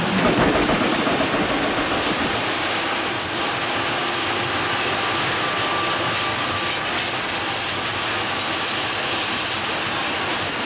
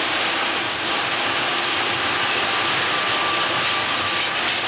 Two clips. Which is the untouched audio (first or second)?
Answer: first